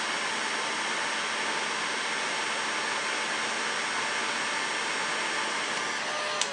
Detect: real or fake real